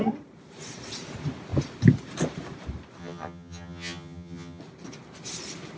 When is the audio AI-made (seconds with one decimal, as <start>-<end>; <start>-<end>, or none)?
3.0-4.6